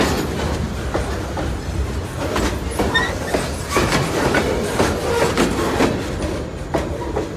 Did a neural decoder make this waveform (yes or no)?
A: no